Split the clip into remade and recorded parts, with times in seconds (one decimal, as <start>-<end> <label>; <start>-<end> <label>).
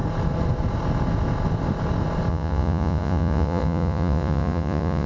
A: 0.0-2.3 recorded; 2.3-5.1 remade